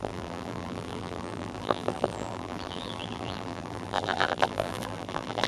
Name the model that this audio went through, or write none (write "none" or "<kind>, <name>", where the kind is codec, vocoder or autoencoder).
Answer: vocoder, BigVGAN v2